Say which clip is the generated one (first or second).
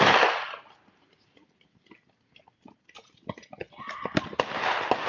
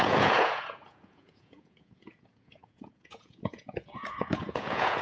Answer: second